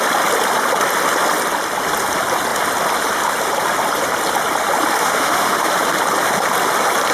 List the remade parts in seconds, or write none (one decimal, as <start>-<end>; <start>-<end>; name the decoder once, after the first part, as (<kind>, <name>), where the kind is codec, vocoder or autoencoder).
5.0-5.7 (autoencoder, DAC-VAE)